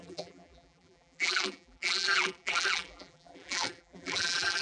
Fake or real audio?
fake